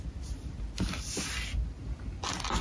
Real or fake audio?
real